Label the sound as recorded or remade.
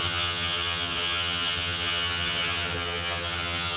remade